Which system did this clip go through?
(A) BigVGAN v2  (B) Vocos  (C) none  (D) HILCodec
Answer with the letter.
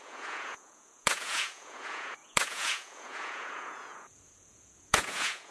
B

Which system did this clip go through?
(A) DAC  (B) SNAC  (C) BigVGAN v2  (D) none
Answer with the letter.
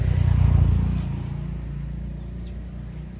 D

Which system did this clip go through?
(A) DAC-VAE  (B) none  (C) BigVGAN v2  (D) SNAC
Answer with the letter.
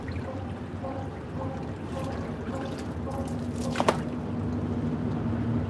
B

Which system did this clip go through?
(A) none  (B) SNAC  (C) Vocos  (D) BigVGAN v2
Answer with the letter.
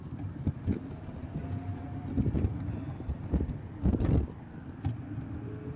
A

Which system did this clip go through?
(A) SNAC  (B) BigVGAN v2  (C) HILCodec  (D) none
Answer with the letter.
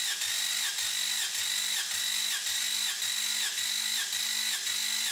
D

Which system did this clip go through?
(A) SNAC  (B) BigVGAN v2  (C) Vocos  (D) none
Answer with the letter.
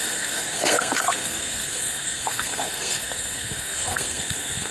A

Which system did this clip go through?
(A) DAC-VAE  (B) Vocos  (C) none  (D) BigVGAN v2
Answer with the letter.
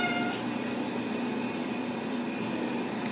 C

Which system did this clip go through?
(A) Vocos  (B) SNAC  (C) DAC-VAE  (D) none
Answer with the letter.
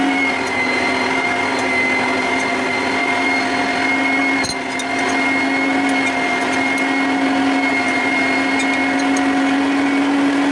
D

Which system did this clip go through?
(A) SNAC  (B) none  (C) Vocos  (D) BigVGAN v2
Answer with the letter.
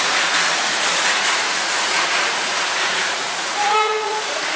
C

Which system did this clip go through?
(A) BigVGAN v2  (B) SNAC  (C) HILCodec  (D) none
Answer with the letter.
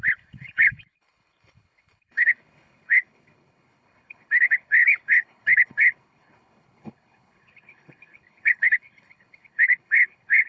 C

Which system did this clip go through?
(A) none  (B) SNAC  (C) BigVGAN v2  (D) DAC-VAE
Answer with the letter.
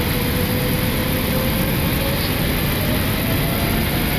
A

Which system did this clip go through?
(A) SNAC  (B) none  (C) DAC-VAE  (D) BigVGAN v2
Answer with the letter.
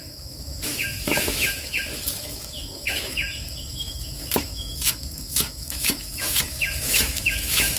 C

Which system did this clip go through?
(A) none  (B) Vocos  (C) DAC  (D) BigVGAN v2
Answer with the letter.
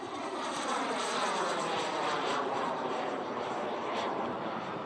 D